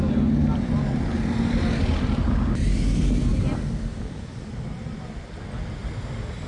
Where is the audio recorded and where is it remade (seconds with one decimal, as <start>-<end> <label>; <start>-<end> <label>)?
0.0-6.5 recorded